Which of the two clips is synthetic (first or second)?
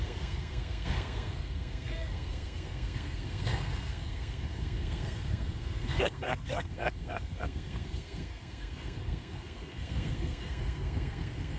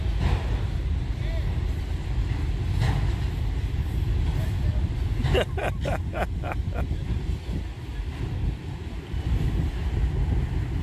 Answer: first